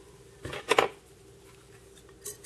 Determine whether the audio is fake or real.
real